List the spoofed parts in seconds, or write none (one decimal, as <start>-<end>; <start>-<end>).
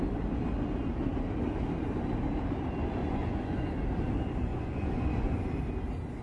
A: 3.0-3.7; 4.5-5.4